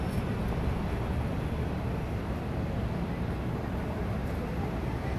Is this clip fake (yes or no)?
no